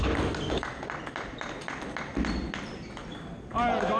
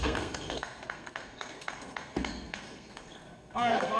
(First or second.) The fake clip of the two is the second